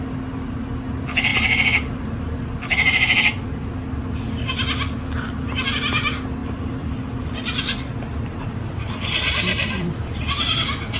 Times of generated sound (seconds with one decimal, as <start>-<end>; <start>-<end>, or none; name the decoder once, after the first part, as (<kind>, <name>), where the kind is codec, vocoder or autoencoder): 6.4-10.2 (vocoder, BigVGAN v2)